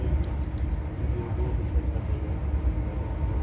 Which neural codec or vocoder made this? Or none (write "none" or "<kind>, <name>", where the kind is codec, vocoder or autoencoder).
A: none